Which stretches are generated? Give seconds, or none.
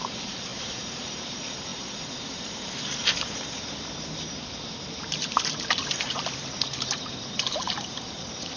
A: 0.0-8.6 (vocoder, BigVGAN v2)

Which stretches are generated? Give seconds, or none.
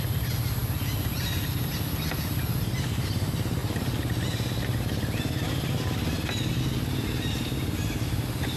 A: none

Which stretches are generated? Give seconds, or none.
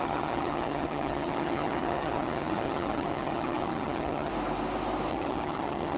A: 0.0-4.3 (vocoder, HiFi-GAN); 5.1-6.0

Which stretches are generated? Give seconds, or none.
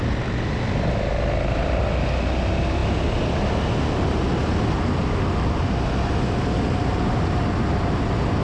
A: none